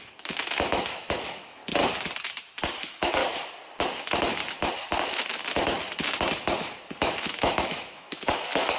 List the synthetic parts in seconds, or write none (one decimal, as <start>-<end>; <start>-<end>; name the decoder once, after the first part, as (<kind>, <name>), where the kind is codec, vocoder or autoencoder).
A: 0.0-1.6 (autoencoder, DAC-VAE); 2.8-3.2; 4.0-4.4; 5.0-5.4; 7.0-8.8